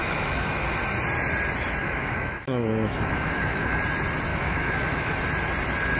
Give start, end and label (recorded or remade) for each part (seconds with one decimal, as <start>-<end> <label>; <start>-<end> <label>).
0.0-0.6 remade; 0.6-1.8 recorded; 1.8-3.8 remade; 3.8-4.3 recorded; 4.3-5.1 remade; 5.1-6.0 recorded